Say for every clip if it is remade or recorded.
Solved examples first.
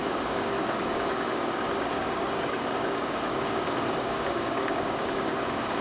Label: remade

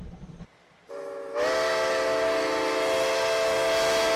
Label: recorded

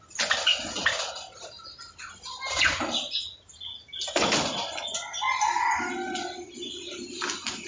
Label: recorded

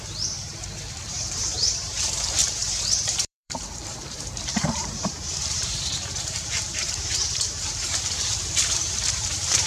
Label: remade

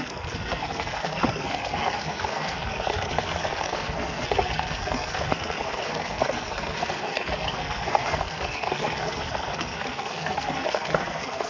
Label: remade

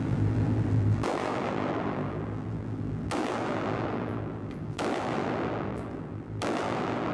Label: remade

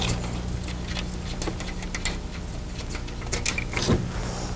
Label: recorded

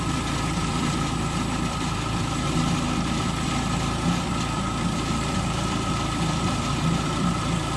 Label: remade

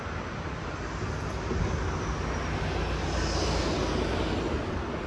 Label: recorded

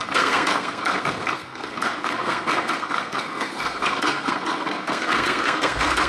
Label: remade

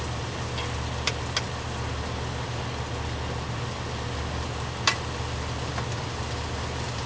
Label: recorded